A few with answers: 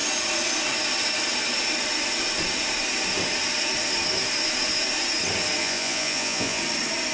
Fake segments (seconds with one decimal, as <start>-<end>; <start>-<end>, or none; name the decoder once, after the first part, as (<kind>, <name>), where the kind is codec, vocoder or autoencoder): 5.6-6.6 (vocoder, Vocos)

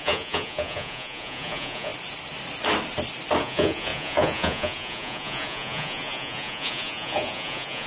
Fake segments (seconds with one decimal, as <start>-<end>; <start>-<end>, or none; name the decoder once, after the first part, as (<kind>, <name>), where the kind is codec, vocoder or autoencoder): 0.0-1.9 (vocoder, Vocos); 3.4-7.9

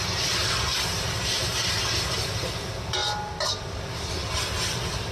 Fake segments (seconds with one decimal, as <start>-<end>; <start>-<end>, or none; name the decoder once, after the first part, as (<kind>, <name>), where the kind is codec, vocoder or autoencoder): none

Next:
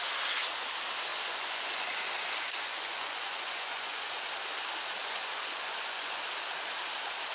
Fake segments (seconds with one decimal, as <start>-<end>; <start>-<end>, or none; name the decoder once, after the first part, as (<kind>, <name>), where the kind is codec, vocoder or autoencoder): 1.1-4.2 (vocoder, Vocos); 5.0-6.2

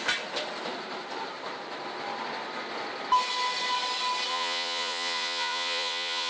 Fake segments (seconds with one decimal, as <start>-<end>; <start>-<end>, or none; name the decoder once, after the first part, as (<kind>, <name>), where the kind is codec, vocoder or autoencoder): 4.3-6.3 (vocoder, Vocos)

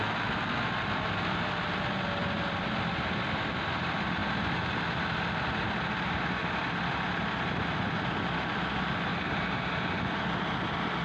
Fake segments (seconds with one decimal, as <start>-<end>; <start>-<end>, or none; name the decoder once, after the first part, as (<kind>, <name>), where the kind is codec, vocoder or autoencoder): none